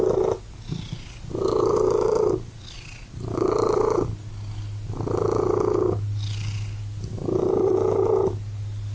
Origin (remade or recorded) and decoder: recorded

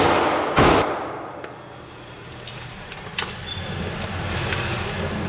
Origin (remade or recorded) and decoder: recorded